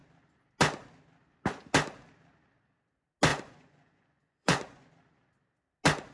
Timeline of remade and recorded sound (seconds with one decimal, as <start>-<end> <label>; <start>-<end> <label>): 0.0-3.3 recorded; 3.3-4.9 remade; 4.9-6.1 recorded